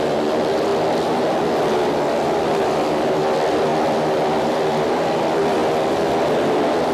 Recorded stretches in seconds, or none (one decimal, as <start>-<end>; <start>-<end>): 0.7-2.5; 5.6-6.2